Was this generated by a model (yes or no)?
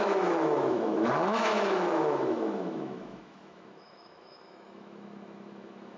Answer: yes